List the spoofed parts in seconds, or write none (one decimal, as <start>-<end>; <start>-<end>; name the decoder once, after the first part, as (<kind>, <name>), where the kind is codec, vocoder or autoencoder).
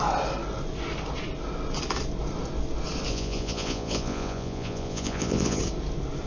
3.1-5.6 (vocoder, Vocos)